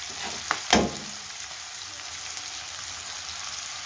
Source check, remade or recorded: recorded